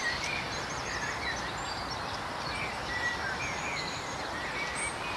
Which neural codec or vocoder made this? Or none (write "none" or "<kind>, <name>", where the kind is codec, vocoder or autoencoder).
none